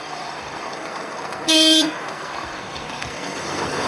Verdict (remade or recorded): remade